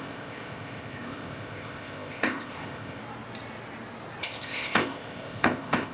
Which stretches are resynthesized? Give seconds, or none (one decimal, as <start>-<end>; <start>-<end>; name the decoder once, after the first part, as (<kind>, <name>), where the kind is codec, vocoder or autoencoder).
0.0-3.0 (codec, ZipCodec); 4.2-5.9